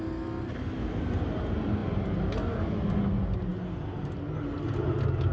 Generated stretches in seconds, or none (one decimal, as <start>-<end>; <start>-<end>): none